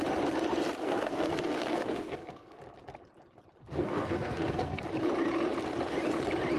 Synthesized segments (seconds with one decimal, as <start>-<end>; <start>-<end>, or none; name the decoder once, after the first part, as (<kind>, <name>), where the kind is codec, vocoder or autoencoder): 0.8-2.6 (codec, SNAC); 3.6-4.8

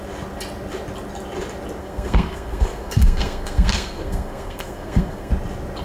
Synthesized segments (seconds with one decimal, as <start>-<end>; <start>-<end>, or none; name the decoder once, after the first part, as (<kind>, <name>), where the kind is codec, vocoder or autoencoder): 1.8-5.3 (codec, SNAC)

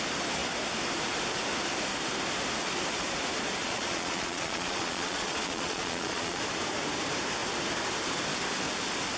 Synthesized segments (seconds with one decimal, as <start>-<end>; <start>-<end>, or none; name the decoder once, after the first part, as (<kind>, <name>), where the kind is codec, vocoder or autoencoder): 3.6-6.4 (vocoder, Vocos)